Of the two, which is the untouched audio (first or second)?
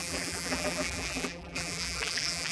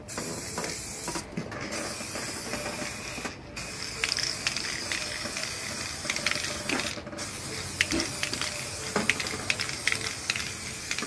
second